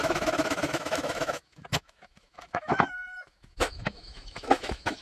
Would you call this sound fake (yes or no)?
yes